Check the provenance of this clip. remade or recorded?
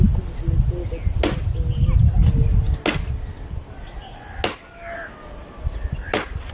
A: recorded